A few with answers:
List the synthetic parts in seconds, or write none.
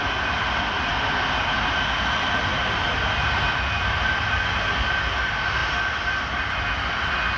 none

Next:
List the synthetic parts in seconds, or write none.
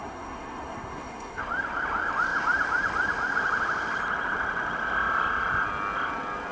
0.0-1.4 (codec, SNAC)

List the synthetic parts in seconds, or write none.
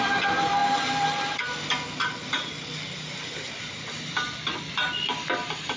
none